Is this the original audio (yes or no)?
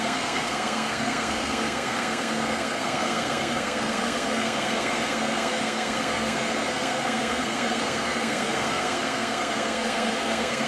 no